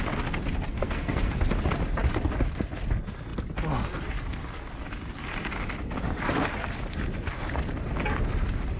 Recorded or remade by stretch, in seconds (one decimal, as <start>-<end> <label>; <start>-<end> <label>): 0.0-0.7 recorded; 0.7-1.3 remade; 1.3-8.8 recorded